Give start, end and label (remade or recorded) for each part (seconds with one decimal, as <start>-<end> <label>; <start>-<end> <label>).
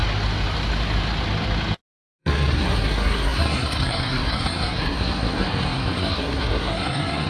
0.0-2.2 recorded; 2.2-7.3 remade